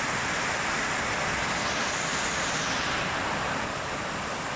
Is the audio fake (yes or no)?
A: no